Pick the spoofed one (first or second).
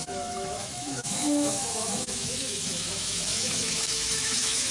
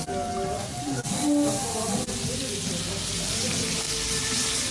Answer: first